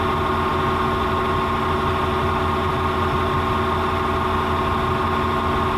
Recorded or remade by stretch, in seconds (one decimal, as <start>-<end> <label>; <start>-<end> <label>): 0.0-5.8 recorded